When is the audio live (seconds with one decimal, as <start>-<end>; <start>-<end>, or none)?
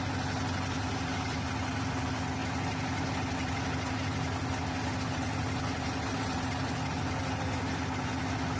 0.0-8.6